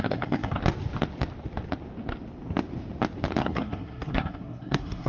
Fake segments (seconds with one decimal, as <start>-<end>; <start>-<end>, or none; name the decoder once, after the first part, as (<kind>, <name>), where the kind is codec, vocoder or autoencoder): 0.0-0.6 (codec, SNAC); 3.4-5.1